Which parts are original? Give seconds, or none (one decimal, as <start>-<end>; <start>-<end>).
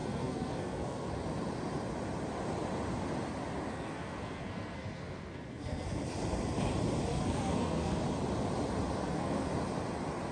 1.1-3.7; 6.0-7.1; 8.0-9.0; 9.5-10.3